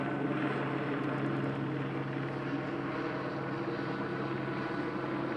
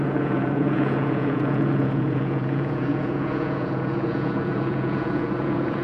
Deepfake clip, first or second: second